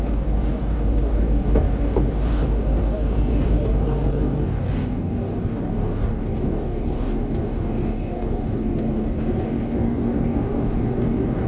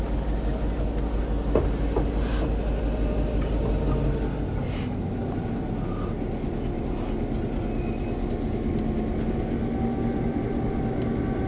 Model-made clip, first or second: first